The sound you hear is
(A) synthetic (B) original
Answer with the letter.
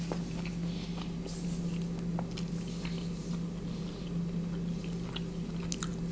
B